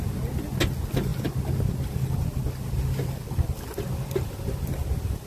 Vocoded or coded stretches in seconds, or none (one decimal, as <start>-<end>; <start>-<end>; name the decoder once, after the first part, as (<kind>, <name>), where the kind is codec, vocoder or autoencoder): none